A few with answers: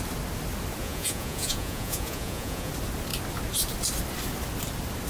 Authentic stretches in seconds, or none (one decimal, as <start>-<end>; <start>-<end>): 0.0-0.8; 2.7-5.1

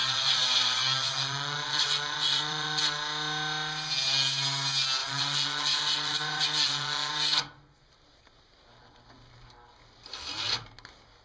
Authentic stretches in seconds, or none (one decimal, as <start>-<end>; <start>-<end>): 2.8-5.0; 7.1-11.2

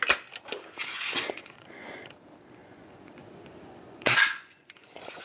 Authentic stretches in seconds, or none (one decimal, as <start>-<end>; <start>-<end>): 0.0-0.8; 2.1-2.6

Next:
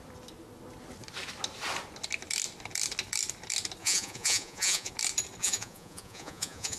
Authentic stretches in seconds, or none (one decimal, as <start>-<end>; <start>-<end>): 0.0-3.8; 4.9-5.4

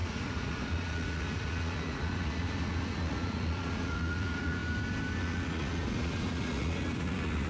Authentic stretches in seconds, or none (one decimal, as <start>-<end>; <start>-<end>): 4.6-5.2

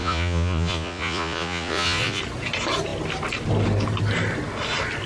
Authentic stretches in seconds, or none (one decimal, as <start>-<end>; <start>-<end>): 2.2-5.1

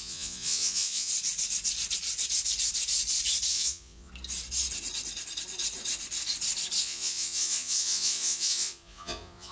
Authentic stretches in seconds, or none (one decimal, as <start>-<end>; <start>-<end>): 1.1-3.5; 4.1-6.8